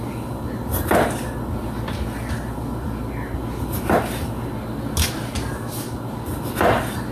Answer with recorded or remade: recorded